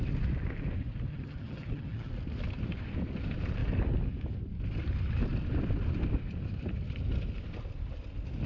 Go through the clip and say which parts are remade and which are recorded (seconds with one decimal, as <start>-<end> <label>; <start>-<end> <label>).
0.0-1.1 recorded; 1.1-2.1 remade; 2.1-8.5 recorded